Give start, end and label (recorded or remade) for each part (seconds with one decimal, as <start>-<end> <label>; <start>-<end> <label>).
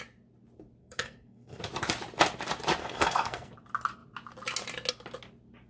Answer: 0.0-0.8 recorded; 0.8-1.6 remade; 1.6-2.8 recorded; 2.8-3.5 remade; 3.5-5.7 recorded